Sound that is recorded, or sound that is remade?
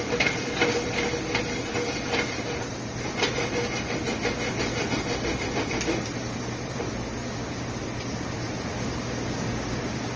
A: recorded